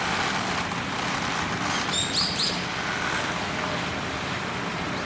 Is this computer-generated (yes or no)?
no